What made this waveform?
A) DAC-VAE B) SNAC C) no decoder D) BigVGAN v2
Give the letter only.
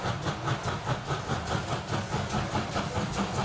C